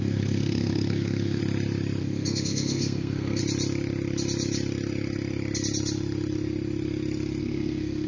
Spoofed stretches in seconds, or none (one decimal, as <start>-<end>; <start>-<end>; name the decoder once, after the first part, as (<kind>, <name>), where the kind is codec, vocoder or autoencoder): 0.0-1.4 (codec, SNAC); 2.0-3.4; 7.4-8.1